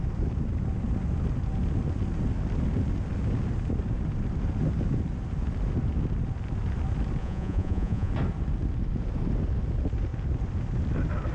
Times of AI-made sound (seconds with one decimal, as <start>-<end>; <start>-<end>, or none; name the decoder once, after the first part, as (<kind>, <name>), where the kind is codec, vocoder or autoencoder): 7.2-8.1 (vocoder, Vocos)